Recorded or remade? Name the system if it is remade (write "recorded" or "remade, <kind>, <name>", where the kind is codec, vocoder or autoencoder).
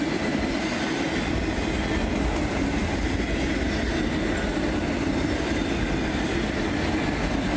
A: recorded